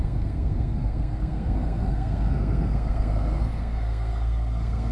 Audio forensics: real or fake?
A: fake